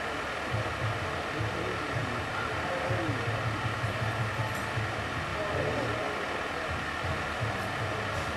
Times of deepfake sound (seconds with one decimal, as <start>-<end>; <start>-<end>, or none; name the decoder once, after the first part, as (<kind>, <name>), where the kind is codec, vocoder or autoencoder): none